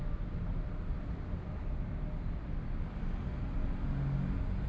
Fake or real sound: real